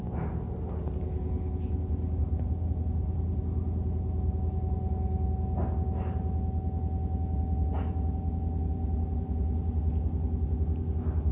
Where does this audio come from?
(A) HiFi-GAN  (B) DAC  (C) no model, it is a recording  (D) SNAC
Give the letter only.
C